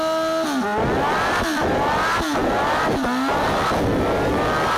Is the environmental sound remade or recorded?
recorded